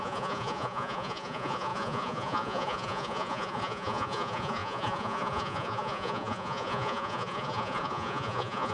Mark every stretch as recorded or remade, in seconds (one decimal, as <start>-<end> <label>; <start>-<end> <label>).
0.0-8.7 remade

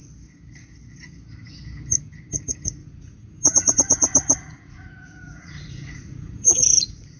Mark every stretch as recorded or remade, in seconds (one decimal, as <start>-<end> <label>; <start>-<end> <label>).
0.0-2.8 recorded; 2.8-7.2 remade

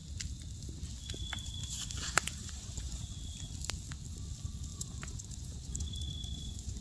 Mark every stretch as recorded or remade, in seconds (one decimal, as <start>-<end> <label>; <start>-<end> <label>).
0.0-1.6 recorded; 1.6-3.0 remade; 3.0-4.7 recorded; 4.7-6.8 remade